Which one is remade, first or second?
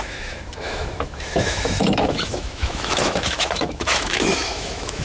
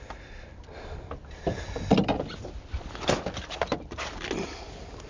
first